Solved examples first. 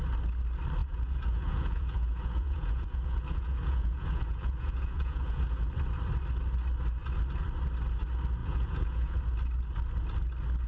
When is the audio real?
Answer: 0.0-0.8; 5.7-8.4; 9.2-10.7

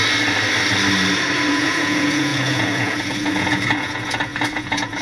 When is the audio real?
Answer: 0.0-1.5